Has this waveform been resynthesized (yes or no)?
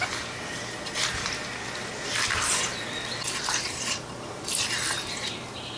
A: no